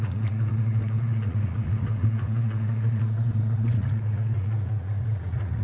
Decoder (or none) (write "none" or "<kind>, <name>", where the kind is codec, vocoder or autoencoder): vocoder, Vocos